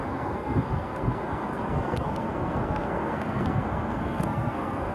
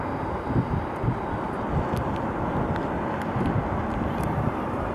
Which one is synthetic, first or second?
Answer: first